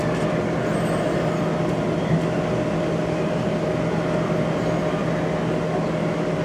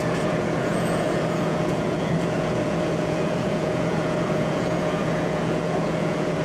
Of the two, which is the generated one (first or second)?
second